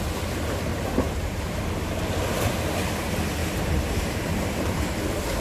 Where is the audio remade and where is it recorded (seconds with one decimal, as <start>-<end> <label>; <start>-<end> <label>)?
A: 0.0-0.7 recorded; 0.7-1.6 remade; 1.6-3.4 recorded; 3.4-4.7 remade; 4.7-5.4 recorded